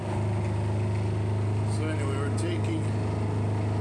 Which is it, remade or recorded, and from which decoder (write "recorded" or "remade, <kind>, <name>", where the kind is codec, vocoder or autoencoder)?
recorded